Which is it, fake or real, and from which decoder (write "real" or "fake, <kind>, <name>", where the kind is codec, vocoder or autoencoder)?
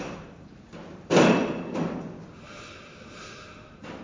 real